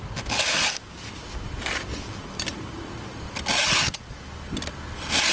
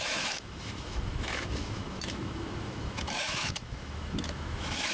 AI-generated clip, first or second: second